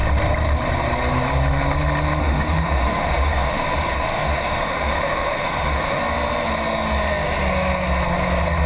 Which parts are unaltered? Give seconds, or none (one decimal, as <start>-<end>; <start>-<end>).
0.0-2.2; 6.0-8.7